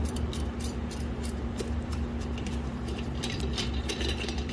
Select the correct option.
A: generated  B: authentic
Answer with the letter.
A